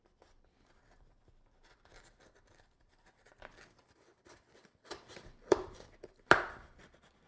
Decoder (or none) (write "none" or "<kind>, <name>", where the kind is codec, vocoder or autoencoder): vocoder, BigVGAN v2